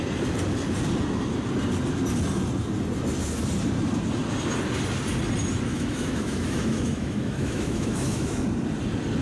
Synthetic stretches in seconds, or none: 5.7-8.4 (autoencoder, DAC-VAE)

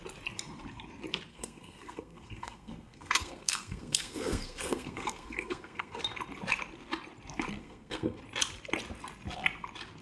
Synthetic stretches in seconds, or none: 1.3-6.0 (codec, SNAC); 7.6-8.2

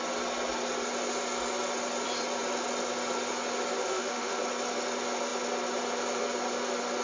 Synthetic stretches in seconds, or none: 3.8-4.4 (autoencoder, DAC-VAE)

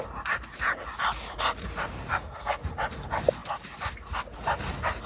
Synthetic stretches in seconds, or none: 2.1-2.6 (codec, SNAC)